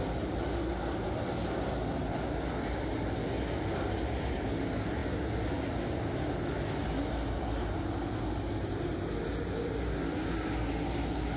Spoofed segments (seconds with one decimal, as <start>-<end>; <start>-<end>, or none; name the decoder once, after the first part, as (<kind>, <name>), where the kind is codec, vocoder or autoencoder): none

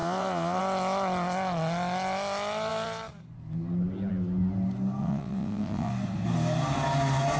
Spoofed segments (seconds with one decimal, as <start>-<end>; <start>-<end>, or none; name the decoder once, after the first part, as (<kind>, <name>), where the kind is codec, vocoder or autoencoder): 0.0-0.6 (vocoder, WaveNeXt); 5.0-5.9

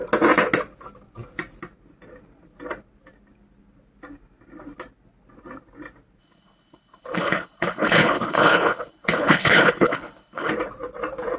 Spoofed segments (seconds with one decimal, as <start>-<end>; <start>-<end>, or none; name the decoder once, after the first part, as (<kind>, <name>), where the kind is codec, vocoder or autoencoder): 6.2-10.5 (codec, HILCodec)

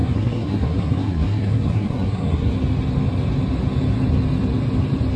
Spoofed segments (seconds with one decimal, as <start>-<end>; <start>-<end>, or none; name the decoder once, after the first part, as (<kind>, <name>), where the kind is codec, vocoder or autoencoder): 0.0-2.5 (codec, SNAC)